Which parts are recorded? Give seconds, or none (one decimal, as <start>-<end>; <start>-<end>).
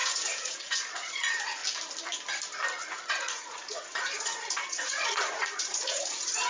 1.6-2.7